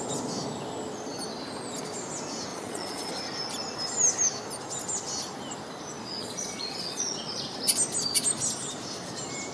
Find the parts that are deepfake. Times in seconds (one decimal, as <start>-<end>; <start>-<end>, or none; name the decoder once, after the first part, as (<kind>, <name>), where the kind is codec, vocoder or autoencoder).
2.5-3.1 (vocoder, Vocos); 6.2-7.6